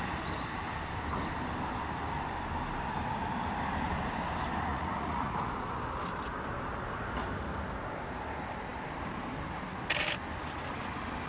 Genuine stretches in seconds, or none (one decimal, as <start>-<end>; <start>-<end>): 0.0-4.7; 5.8-11.3